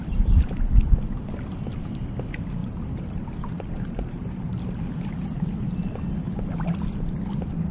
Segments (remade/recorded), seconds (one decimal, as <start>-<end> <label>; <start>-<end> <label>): 0.0-0.7 remade; 0.7-2.6 recorded; 2.6-5.5 remade; 5.5-7.7 recorded